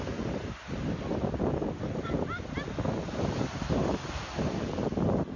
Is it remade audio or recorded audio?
recorded